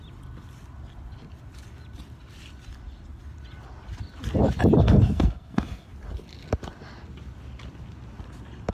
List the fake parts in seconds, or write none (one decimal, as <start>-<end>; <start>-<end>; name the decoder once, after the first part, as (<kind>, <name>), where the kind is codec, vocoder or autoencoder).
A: 4.8-5.9 (codec, SNAC)